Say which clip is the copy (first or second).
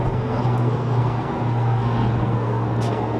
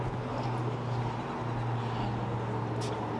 first